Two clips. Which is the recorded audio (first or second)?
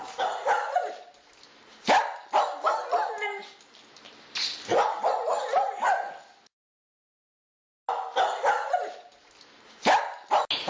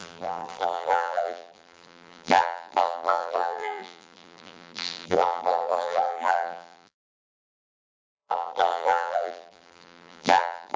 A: first